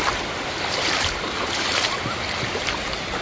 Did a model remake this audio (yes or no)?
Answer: no